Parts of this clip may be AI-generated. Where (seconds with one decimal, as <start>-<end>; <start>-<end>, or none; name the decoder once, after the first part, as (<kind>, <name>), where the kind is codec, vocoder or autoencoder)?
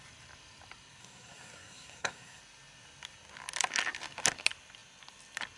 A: 1.0-2.4 (codec, SNAC)